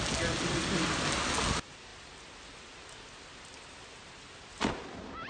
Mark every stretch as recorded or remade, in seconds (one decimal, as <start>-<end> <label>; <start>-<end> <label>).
0.0-5.3 recorded